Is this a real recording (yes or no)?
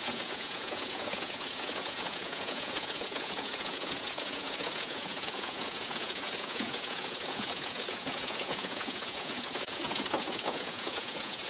no